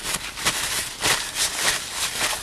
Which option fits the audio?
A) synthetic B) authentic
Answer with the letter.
A